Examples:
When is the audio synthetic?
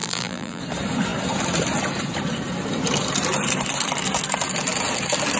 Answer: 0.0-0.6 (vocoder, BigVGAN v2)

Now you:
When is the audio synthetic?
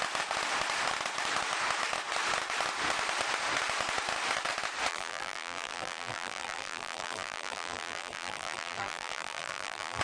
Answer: 4.9-10.0 (vocoder, BigVGAN v2)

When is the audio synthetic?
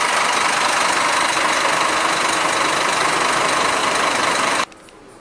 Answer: 3.8-4.7 (vocoder, BigVGAN v2)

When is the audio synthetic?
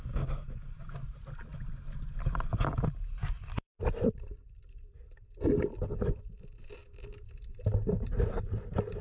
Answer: 1.5-5.0 (vocoder, BigVGAN v2)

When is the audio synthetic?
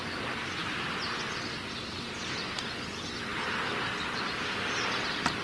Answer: none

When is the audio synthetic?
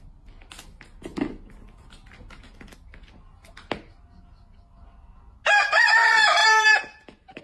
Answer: 6.4-7.4 (vocoder, BigVGAN v2)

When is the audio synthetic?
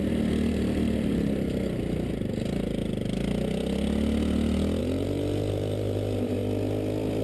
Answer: 0.0-2.8 (vocoder, BigVGAN v2); 4.8-6.4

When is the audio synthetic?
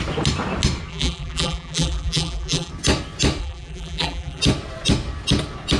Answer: 0.9-2.7 (vocoder, BigVGAN v2); 3.4-4.4